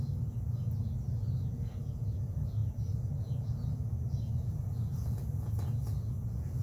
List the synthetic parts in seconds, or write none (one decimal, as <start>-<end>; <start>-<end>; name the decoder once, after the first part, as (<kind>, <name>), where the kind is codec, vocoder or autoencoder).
0.0-6.6 (vocoder, Vocos)

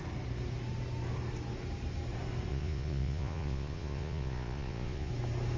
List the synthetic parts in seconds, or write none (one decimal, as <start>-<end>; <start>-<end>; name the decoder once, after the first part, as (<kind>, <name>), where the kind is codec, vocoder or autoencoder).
2.5-5.1 (vocoder, Vocos)

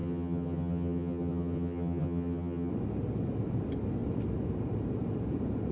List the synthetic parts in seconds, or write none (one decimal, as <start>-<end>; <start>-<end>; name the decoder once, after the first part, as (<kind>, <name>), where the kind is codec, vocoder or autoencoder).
0.0-2.7 (vocoder, HiFi-GAN)

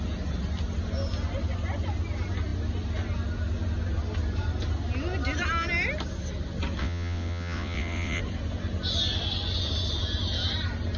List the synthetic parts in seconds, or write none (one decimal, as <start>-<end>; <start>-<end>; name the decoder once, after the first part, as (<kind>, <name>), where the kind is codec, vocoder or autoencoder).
6.8-8.2 (vocoder, WaveNeXt)

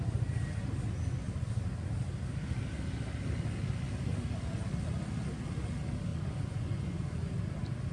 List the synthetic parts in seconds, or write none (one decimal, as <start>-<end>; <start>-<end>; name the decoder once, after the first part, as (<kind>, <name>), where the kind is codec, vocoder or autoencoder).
6.1-7.3 (vocoder, Vocos)